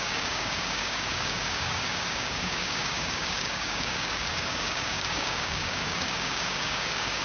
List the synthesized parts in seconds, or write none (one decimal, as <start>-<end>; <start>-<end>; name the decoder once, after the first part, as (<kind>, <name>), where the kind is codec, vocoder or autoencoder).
0.0-7.2 (codec, DAC)